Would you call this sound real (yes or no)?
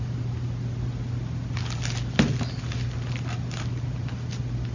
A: yes